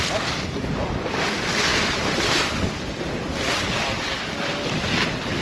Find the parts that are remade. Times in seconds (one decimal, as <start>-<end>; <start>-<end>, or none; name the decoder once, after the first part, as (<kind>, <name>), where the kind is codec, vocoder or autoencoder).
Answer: none